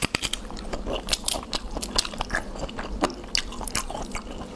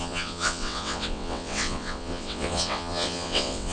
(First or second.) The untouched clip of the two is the first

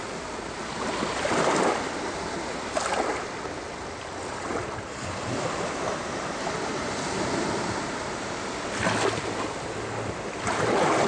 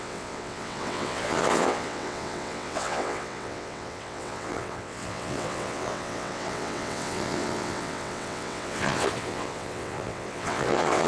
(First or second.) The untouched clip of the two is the first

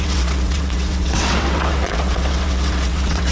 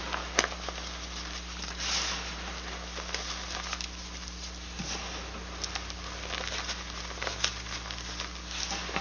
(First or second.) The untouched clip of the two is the second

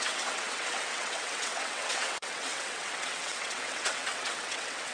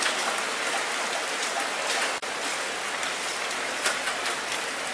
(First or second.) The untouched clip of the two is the second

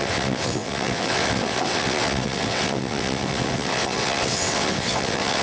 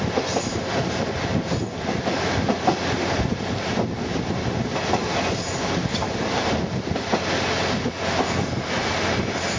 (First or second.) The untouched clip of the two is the second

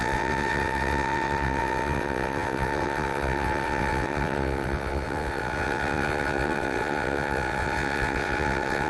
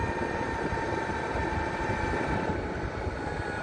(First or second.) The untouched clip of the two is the second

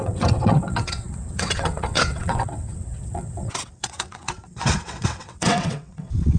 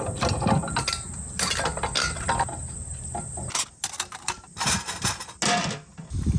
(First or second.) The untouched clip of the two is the second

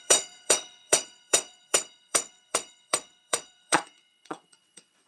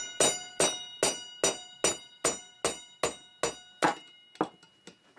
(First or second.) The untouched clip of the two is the second